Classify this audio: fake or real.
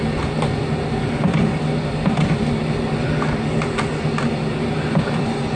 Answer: real